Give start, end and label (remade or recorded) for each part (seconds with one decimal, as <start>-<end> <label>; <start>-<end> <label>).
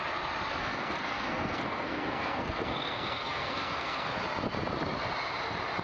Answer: 0.0-0.6 recorded; 0.6-4.1 remade; 4.1-5.8 recorded